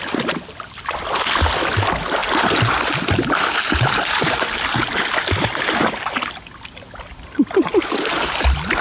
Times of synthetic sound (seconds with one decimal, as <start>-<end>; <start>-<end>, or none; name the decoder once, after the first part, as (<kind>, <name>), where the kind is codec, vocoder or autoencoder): none